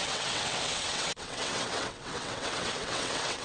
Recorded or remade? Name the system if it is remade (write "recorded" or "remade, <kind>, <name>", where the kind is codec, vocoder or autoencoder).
remade, vocoder, WaveNeXt